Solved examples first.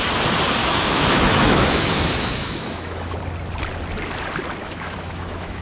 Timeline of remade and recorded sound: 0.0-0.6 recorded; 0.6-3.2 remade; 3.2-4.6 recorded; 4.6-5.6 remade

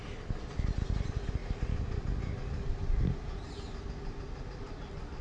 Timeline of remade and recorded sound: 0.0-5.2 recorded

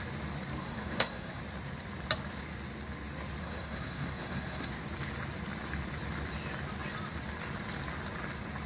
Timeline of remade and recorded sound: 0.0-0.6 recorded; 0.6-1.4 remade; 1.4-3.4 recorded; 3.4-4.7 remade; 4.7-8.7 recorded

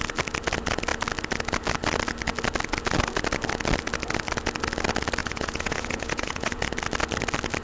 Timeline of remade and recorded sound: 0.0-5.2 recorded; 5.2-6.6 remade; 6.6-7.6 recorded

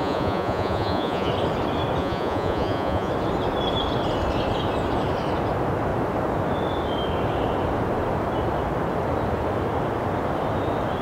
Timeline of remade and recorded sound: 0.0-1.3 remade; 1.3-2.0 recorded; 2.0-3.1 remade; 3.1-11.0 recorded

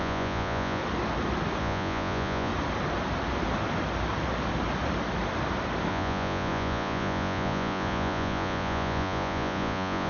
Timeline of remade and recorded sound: 0.0-0.8 remade; 0.8-1.6 recorded; 1.6-2.5 remade; 2.5-5.9 recorded; 5.9-10.1 remade

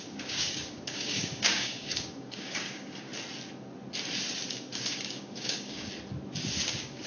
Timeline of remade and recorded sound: 0.0-3.1 remade; 3.1-4.5 recorded; 4.5-5.9 remade; 5.9-6.6 recorded; 6.6-7.1 remade

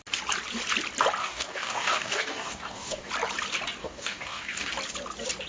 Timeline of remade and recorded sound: 0.0-1.2 recorded; 1.2-3.1 remade; 3.1-3.8 recorded; 3.8-4.7 remade; 4.7-5.5 recorded